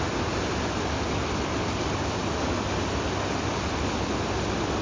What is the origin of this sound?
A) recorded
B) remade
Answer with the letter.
A